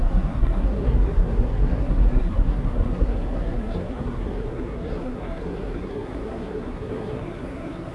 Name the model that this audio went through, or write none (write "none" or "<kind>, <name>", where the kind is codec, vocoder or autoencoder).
codec, SNAC